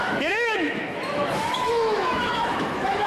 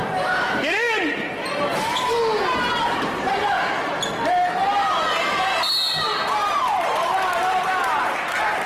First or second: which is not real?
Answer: first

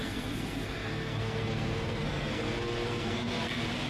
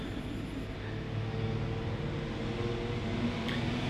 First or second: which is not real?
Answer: first